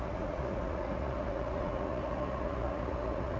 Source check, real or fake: fake